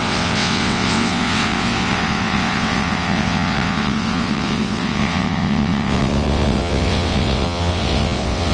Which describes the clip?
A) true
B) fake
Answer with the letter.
B